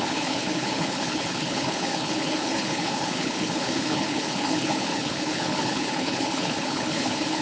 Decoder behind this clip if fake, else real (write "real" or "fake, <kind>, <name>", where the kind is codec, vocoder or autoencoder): fake, codec, HILCodec